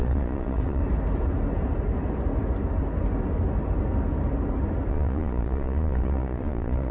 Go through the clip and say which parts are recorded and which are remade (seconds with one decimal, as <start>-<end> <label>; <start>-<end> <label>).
0.0-0.8 remade; 0.8-4.9 recorded; 4.9-6.9 remade